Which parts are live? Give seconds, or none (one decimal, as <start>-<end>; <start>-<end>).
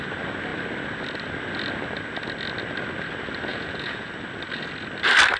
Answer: 0.0-3.5; 4.1-5.4